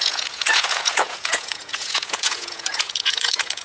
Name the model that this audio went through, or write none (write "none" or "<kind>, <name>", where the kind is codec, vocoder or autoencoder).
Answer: vocoder, Vocos